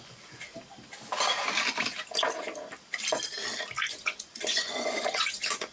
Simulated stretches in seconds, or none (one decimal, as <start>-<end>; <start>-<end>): 0.0-0.5; 3.9-5.7

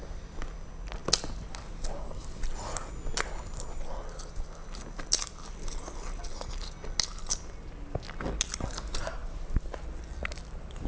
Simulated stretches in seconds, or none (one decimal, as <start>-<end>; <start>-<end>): none